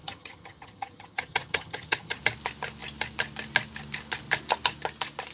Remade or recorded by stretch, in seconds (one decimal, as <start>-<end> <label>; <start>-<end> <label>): 0.0-2.2 remade; 2.2-5.3 recorded